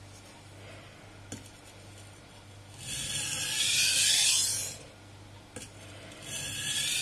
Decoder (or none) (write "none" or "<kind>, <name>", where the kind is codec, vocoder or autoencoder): none